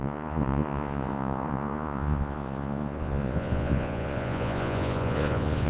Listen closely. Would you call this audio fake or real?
fake